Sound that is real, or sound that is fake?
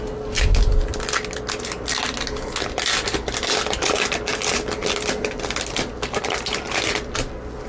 real